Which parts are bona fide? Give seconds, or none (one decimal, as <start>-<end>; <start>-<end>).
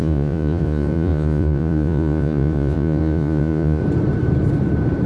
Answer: 3.8-5.1